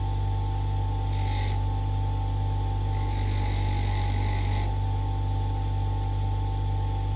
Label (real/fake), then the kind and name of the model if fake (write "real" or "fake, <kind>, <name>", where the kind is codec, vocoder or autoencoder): real